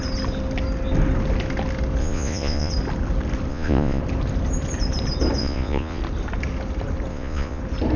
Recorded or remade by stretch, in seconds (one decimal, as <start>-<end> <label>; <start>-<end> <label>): 0.0-2.0 recorded; 2.0-2.7 remade; 2.7-3.5 recorded; 3.5-4.0 remade; 4.0-5.4 recorded; 5.4-6.0 remade; 6.0-7.1 recorded; 7.1-7.6 remade; 7.6-8.0 recorded